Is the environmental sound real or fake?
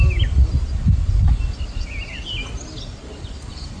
real